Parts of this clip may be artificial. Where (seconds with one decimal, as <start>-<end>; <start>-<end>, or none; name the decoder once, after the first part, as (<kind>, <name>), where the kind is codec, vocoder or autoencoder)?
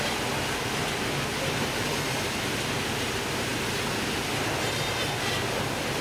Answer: none